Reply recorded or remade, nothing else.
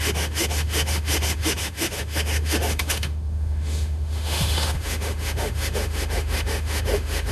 remade